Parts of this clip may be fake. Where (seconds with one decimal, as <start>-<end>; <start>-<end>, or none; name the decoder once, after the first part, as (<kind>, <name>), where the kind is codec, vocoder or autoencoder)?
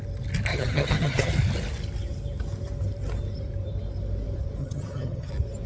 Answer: 0.5-1.3 (vocoder, HiFi-GAN); 4.6-5.3